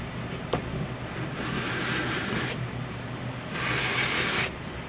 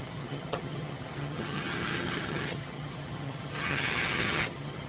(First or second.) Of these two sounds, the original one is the first